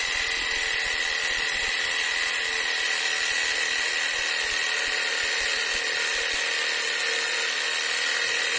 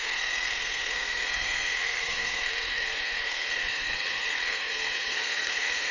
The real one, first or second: first